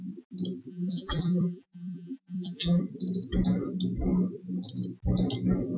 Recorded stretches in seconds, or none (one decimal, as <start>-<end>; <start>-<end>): 0.0-0.7; 2.8-5.8